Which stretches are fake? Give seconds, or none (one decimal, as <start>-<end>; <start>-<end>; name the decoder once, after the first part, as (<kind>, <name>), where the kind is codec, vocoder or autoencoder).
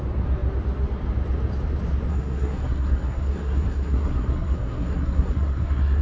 2.1-6.0 (codec, SNAC)